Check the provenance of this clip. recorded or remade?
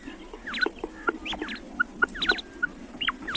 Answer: recorded